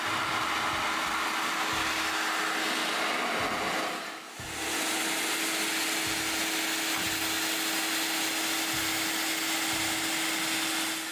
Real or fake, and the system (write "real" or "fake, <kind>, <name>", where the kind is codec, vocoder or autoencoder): real